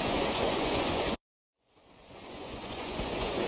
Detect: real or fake fake